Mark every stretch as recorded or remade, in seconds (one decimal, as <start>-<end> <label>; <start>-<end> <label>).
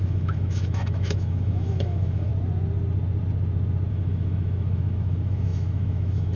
0.0-2.3 remade; 2.3-3.9 recorded; 3.9-6.4 remade